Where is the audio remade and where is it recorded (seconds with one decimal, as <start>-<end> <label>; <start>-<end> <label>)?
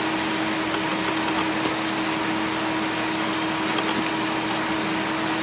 0.0-5.4 recorded